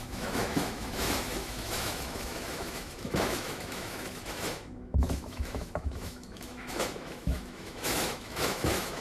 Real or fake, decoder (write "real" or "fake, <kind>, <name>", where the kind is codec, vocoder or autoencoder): fake, autoencoder, DAC-VAE